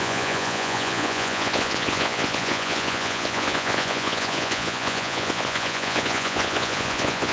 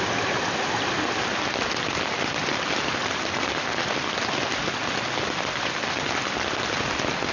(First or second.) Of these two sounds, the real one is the second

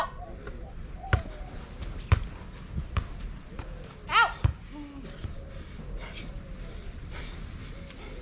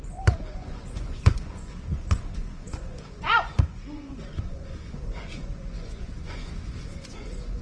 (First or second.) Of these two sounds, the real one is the first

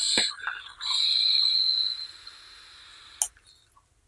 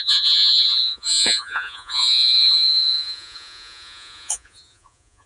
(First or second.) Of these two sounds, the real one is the first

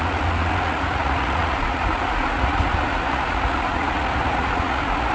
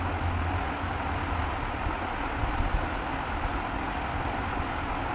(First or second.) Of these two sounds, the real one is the second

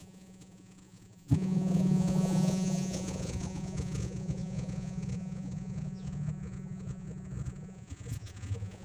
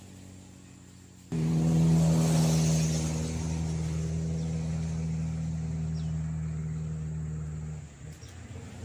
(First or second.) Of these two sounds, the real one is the second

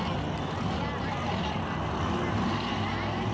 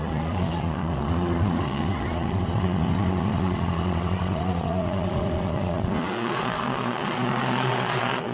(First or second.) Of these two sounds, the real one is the first